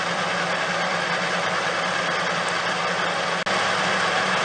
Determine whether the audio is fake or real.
real